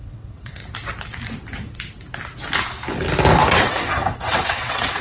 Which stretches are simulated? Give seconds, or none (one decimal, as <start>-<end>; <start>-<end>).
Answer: 0.0-0.6; 3.6-5.0